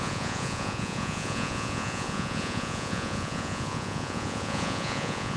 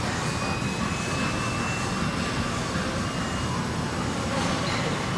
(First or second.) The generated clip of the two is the first